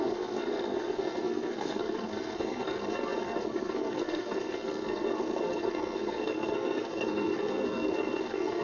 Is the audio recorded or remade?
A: remade